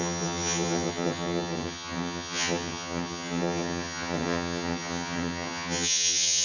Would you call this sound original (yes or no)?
no